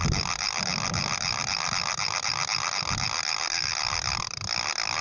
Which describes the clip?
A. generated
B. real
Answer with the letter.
B